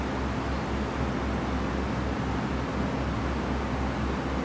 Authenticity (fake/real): real